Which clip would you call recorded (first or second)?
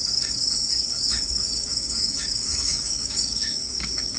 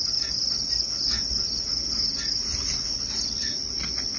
second